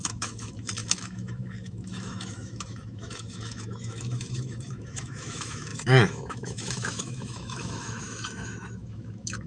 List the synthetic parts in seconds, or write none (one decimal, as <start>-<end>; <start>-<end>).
0.0-9.5